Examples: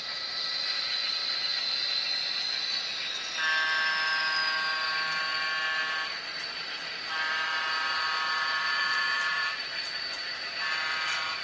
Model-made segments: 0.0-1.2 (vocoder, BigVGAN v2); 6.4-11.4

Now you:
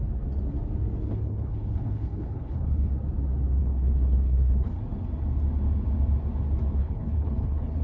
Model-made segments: 1.0-2.9 (codec, HILCodec); 3.6-4.8; 6.8-7.8

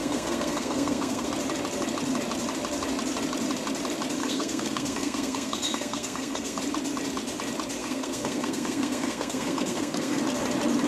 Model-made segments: 0.0-1.3 (codec, SNAC); 4.2-6.6; 7.8-10.2

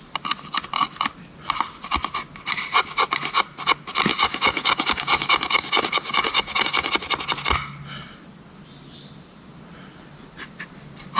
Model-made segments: 4.1-6.9 (codec, DAC)

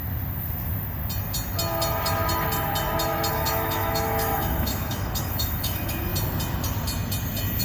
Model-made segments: 3.3-6.1 (autoencoder, DAC-VAE)

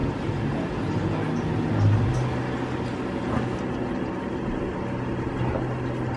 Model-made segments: none

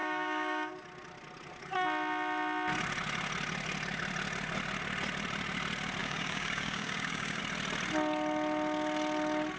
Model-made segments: 0.0-0.7 (codec, DAC); 6.0-7.4

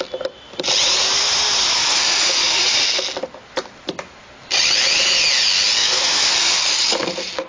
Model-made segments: 5.8-6.3 (autoencoder, DAC-VAE)